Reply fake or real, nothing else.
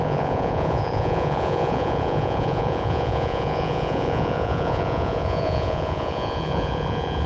fake